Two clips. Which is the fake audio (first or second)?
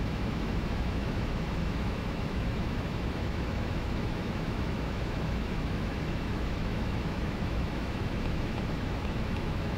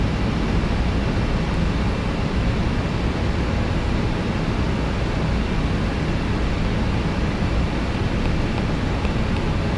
first